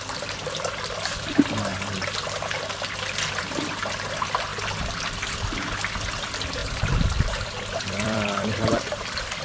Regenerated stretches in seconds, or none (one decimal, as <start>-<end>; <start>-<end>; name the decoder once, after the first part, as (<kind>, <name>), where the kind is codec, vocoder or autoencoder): 6.6-9.4 (vocoder, BigVGAN v2)